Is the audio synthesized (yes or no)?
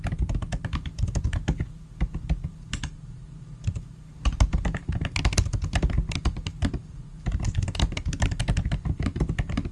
no